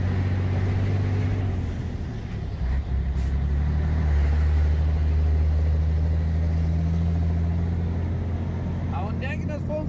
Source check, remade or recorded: recorded